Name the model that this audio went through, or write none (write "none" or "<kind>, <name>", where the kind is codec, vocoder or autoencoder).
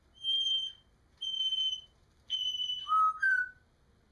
none